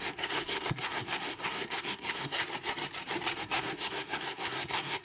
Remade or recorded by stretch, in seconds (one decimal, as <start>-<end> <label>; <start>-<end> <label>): 0.0-2.4 remade; 2.4-3.4 recorded; 3.4-5.0 remade